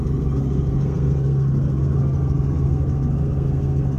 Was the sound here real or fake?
fake